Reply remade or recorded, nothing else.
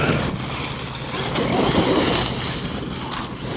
recorded